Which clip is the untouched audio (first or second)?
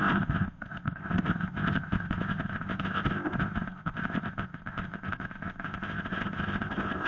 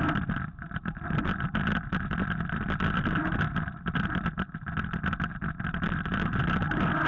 second